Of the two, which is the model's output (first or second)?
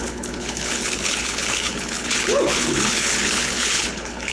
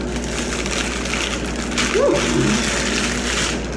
first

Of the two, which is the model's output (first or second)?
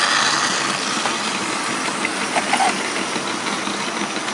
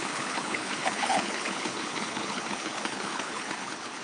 second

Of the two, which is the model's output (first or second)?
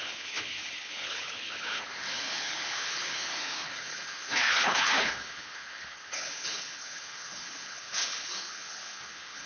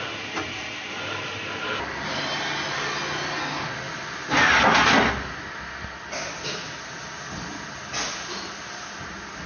first